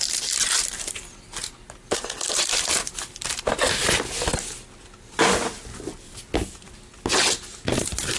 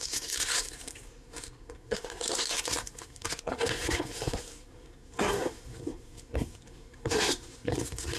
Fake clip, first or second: second